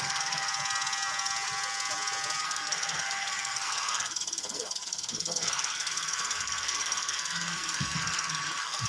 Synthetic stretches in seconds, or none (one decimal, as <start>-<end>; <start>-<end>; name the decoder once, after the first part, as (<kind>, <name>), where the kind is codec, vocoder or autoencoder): 0.0-0.5 (codec, SNAC); 2.4-8.9